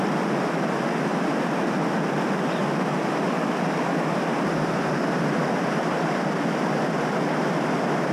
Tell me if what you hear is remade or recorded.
recorded